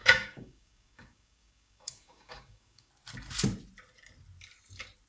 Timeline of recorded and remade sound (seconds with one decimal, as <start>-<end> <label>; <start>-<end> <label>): 0.0-2.9 remade; 2.9-5.1 recorded